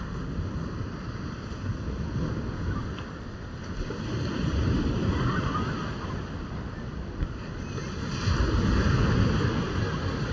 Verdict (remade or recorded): recorded